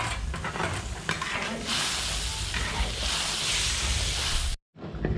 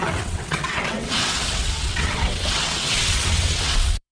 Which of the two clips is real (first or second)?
first